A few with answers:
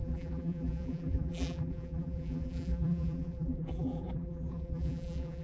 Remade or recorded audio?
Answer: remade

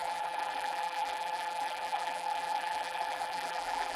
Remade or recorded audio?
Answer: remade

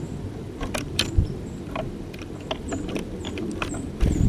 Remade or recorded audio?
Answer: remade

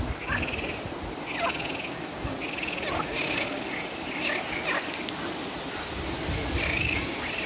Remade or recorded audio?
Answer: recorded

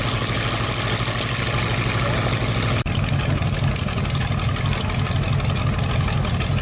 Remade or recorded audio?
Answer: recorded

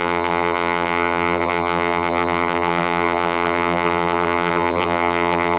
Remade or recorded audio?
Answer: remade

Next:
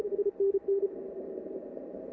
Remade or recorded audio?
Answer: remade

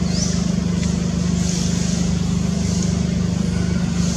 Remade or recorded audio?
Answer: recorded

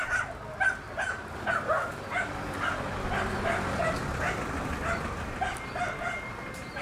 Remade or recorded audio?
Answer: recorded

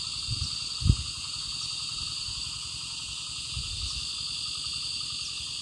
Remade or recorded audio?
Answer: recorded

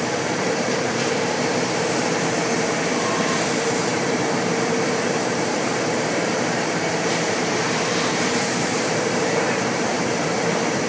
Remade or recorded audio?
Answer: remade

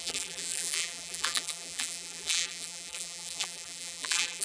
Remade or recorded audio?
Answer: remade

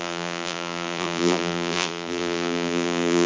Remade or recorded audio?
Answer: remade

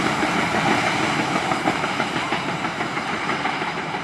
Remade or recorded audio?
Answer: remade